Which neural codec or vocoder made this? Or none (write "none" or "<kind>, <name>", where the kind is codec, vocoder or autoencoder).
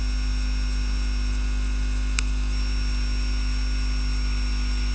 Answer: none